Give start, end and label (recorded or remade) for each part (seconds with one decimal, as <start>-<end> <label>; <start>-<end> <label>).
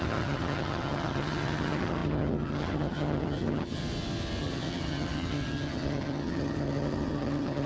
0.0-3.8 remade; 3.8-4.4 recorded; 4.4-7.7 remade